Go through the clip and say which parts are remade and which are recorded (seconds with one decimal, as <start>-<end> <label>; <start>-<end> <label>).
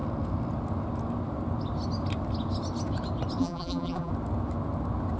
0.0-3.4 recorded; 3.4-4.1 remade; 4.1-5.2 recorded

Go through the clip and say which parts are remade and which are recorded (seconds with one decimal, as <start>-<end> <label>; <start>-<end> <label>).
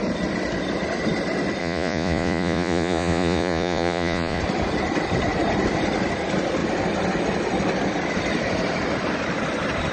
0.0-1.6 recorded; 1.6-4.4 remade; 4.4-9.9 recorded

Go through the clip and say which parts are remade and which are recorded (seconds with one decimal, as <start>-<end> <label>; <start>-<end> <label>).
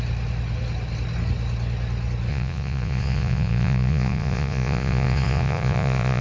0.0-2.3 recorded; 2.3-6.2 remade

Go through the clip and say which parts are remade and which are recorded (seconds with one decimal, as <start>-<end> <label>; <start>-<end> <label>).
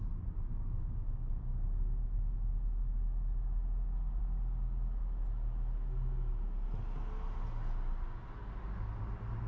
0.0-9.5 recorded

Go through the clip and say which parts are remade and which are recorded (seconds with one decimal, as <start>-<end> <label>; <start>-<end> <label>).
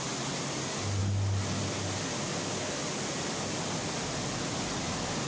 0.0-5.3 recorded